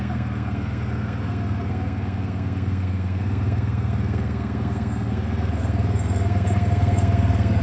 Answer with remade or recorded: remade